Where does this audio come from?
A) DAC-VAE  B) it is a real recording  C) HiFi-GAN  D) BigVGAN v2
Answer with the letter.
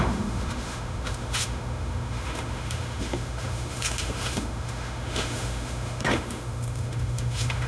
A